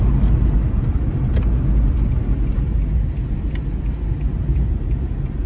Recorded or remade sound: recorded